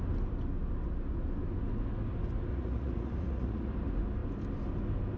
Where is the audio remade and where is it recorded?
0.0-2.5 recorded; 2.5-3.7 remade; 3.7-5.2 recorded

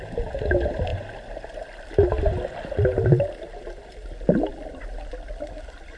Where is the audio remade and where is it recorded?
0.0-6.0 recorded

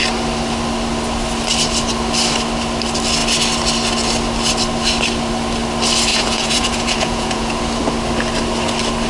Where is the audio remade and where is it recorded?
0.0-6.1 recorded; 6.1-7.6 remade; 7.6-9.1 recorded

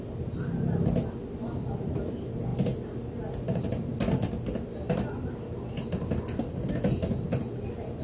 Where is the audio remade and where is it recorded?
0.0-8.0 recorded

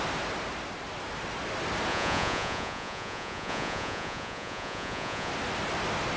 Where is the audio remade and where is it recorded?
0.0-1.9 recorded; 1.9-5.3 remade; 5.3-6.2 recorded

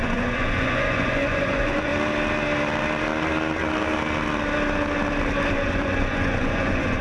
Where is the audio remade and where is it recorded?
0.0-1.9 remade; 1.9-5.5 recorded; 5.5-7.0 remade

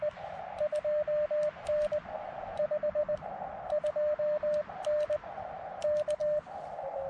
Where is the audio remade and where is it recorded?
0.0-7.1 recorded